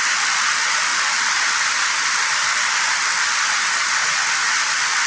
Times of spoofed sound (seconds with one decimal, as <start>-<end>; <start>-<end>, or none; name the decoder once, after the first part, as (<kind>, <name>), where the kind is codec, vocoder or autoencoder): none